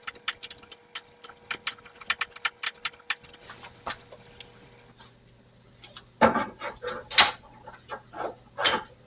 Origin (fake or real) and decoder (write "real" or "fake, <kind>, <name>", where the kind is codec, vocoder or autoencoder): real